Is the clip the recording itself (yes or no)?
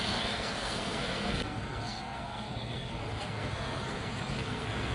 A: no